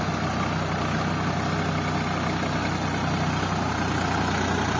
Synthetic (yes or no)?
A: no